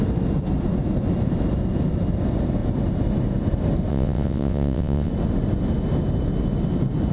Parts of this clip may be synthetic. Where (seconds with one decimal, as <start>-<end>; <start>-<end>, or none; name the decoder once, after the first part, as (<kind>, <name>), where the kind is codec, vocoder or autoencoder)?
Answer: 3.9-5.1 (vocoder, WaveNeXt)